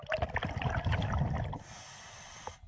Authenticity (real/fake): real